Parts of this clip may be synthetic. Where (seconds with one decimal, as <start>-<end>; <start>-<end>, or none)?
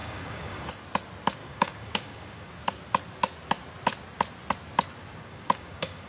0.0-0.7; 1.4-2.5; 5.1-6.1